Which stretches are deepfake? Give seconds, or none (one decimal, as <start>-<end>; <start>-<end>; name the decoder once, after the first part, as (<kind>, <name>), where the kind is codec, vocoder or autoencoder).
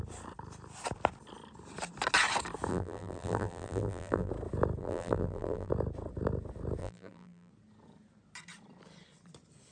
2.7-4.3 (vocoder, BigVGAN v2); 4.8-5.7; 6.8-7.5